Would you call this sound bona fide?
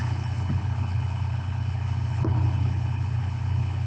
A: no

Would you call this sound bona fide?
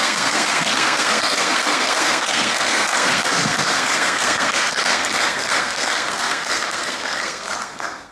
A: no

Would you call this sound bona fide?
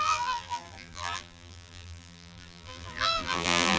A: no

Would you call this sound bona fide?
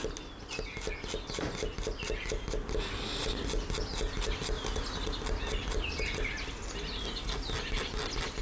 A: yes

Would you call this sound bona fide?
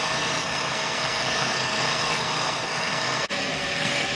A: no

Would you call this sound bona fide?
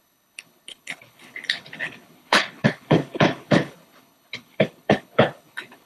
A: no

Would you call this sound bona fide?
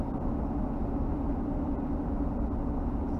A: yes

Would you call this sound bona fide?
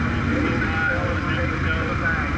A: yes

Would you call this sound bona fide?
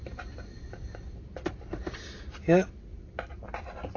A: yes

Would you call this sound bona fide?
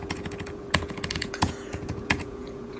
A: no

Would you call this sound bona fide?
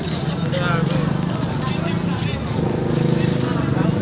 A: yes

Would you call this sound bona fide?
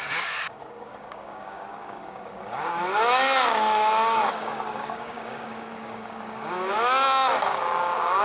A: no